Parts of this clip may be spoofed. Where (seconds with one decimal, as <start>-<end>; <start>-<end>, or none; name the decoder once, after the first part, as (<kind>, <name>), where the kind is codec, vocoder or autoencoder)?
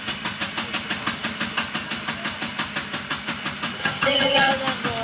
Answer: 3.8-4.5 (vocoder, HiFi-GAN)